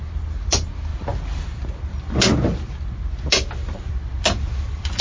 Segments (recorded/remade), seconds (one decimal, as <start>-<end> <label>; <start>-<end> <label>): 0.0-5.0 recorded